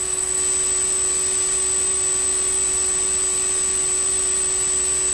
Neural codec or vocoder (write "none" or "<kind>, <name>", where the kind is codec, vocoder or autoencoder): none